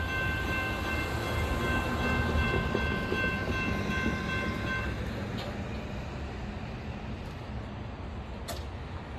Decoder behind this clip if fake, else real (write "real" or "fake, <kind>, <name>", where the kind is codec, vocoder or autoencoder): real